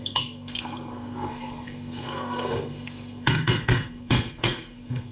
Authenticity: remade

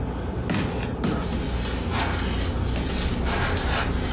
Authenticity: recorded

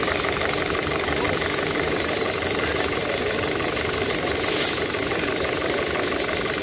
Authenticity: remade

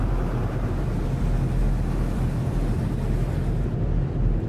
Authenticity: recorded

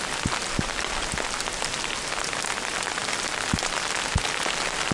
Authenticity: recorded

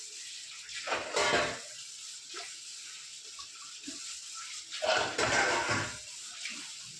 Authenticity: recorded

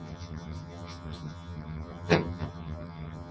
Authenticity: remade